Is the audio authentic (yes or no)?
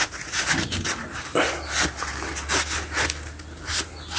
yes